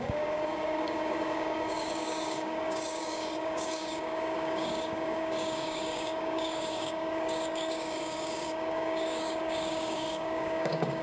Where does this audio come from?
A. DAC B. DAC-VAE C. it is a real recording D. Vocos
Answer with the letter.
A